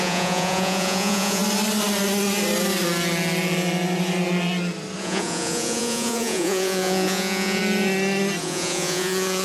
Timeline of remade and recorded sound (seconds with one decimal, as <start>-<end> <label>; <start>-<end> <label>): 0.0-1.4 remade; 1.4-5.0 recorded; 5.0-7.6 remade; 7.6-8.4 recorded; 8.4-9.4 remade